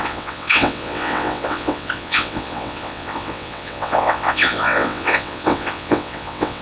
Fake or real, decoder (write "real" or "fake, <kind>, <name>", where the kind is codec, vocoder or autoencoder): fake, vocoder, WaveNeXt